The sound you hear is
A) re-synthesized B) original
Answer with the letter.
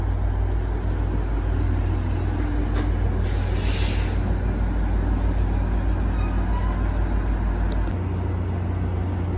B